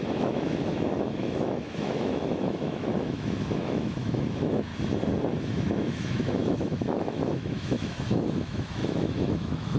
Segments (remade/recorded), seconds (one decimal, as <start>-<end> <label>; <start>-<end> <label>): 0.0-4.7 remade; 4.7-5.5 recorded; 5.5-9.8 remade